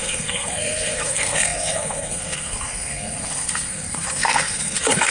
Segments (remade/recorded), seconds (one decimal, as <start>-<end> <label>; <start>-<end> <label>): 0.0-5.1 remade